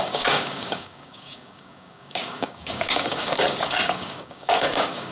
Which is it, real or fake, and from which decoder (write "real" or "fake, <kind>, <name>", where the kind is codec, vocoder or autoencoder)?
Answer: fake, codec, DAC